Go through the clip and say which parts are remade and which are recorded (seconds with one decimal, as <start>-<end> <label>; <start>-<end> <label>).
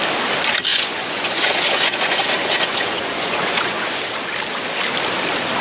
0.0-0.7 recorded; 0.7-4.0 remade; 4.0-5.6 recorded